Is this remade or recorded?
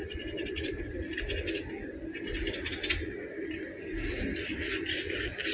recorded